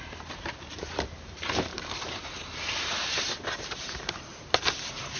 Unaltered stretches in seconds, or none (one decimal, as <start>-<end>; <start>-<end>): none